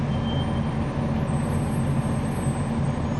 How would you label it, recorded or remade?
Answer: recorded